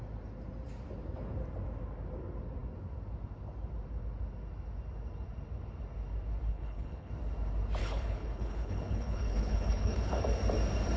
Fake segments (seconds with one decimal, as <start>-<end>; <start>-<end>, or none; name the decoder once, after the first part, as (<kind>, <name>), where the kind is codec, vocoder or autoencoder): 6.5-7.1 (codec, HILCodec); 7.8-10.2